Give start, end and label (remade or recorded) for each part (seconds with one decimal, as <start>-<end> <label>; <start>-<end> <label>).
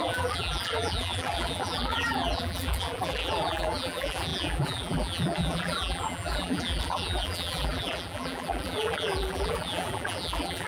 0.0-10.7 remade